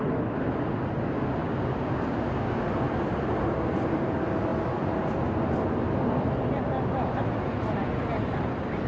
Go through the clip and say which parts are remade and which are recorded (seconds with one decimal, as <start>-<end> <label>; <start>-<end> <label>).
0.0-1.4 recorded; 1.4-2.6 remade; 2.6-8.9 recorded